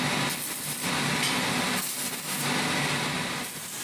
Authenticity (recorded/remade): recorded